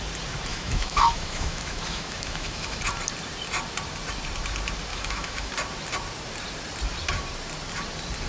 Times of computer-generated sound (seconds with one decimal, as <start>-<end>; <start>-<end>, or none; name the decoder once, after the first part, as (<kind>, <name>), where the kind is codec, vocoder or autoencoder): 0.5-2.8 (autoencoder, DAC-VAE); 4.9-5.5